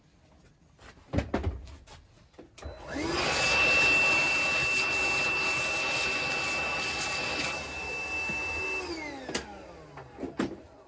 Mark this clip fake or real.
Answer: real